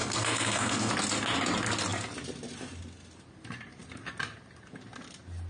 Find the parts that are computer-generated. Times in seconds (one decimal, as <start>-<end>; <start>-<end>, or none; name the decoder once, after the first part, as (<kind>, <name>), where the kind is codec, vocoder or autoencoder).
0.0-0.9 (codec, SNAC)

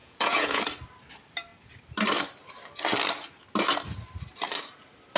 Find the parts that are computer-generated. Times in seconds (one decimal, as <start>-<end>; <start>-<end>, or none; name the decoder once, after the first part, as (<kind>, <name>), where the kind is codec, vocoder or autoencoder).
0.0-0.6 (vocoder, Vocos)

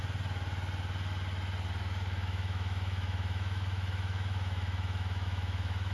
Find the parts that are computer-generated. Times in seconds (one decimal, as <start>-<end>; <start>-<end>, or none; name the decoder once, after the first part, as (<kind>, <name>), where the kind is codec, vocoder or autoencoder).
1.8-5.9 (autoencoder, DAC-VAE)

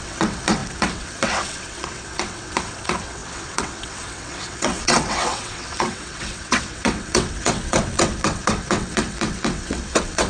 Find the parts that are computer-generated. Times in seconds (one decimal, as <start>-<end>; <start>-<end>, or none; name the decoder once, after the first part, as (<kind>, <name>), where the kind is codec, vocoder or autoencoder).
0.0-10.3 (vocoder, WaveNeXt)

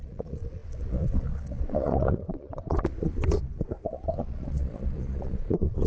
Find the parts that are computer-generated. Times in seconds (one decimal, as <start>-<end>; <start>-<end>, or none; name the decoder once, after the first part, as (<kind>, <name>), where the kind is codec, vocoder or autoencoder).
0.0-5.9 (vocoder, Vocos)